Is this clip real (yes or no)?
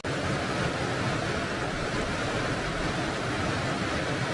yes